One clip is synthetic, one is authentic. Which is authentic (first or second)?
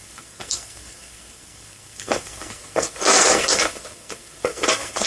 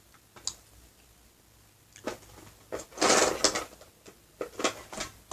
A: second